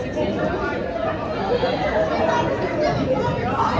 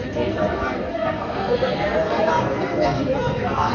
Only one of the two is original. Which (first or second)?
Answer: first